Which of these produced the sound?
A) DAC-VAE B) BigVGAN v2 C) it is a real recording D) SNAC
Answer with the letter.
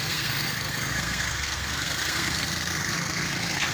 D